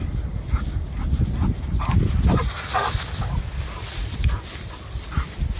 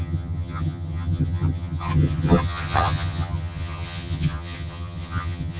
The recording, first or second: first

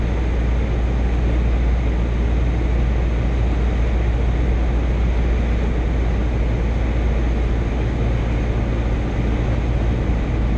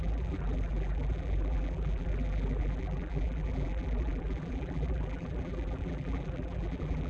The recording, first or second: first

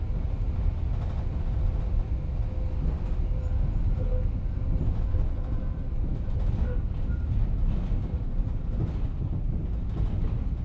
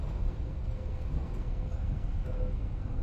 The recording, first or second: first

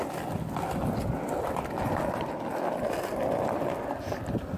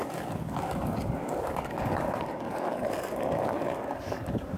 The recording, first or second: first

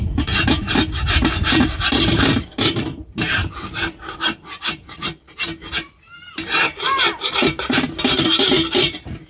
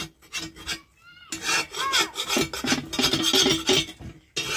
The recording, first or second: second